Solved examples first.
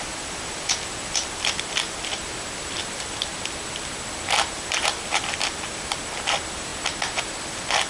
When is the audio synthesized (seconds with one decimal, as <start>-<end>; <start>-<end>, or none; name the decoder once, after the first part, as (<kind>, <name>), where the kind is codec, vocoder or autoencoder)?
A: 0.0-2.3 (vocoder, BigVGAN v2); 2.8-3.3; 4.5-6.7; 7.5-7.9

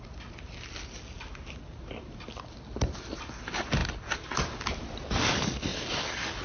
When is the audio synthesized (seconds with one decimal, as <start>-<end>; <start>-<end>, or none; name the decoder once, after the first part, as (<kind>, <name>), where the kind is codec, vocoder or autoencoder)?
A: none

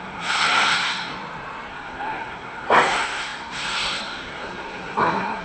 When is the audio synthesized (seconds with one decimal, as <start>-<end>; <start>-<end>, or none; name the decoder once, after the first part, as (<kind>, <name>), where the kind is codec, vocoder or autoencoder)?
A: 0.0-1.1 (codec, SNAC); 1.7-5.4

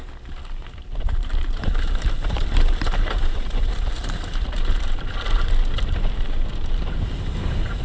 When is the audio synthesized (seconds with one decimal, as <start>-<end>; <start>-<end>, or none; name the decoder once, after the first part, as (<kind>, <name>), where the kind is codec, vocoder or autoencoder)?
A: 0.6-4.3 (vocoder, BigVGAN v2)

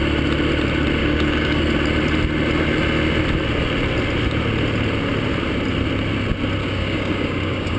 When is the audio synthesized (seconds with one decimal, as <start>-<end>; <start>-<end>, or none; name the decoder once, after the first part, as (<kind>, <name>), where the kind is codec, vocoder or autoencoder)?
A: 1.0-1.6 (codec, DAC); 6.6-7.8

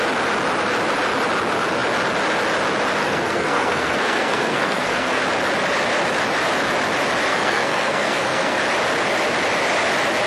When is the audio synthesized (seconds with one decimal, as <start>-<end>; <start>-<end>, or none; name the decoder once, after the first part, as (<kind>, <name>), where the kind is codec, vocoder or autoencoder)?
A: 3.0-5.2 (codec, SNAC); 7.3-8.6